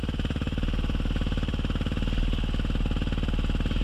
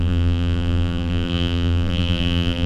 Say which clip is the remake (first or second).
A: second